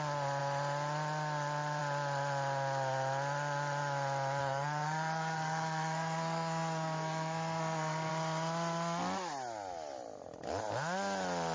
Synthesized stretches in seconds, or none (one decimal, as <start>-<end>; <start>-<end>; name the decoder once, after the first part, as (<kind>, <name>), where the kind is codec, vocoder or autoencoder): 4.4-8.1 (codec, SNAC)